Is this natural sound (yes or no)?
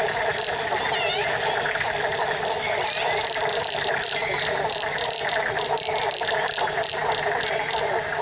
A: yes